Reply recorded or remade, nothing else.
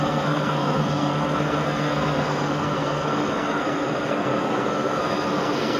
remade